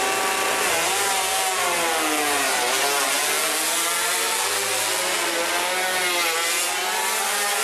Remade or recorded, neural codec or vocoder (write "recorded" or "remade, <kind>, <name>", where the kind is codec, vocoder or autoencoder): recorded